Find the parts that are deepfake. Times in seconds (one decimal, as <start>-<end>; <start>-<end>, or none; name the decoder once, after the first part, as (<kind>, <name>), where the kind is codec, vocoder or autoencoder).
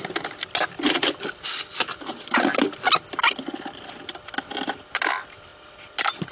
none